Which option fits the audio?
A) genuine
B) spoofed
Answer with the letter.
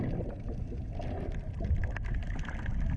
A